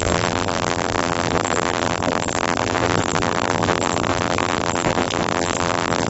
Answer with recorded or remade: remade